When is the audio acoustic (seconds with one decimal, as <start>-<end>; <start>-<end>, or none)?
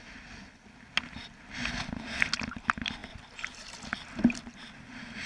0.0-5.3